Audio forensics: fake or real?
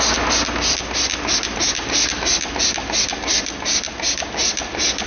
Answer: real